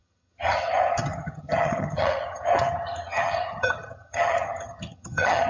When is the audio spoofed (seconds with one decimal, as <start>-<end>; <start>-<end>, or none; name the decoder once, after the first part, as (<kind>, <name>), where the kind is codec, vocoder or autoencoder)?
0.0-5.5 (vocoder, HiFi-GAN)